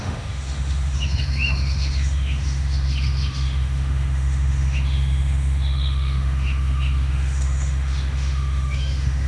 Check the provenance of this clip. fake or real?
fake